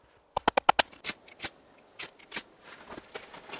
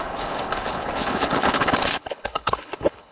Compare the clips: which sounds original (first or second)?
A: first